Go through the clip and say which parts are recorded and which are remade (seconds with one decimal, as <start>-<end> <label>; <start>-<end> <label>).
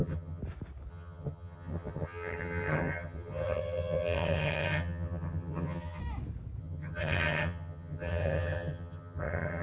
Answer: 0.0-0.4 remade; 0.4-0.9 recorded; 0.9-6.0 remade; 6.0-6.6 recorded; 6.6-9.6 remade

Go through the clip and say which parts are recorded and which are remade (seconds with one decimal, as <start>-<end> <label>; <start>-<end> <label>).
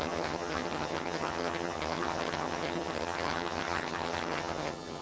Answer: 0.0-5.0 remade